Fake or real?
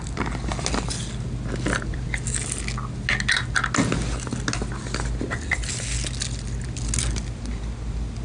real